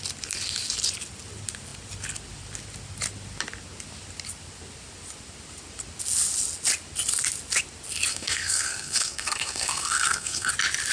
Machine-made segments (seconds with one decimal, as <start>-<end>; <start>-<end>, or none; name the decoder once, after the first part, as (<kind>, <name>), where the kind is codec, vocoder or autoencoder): 8.1-10.5 (codec, SNAC)